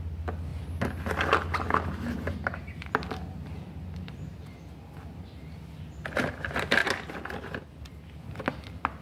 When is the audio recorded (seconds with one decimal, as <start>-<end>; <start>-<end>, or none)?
0.0-9.0